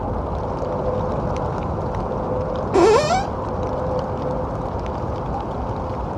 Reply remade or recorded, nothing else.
recorded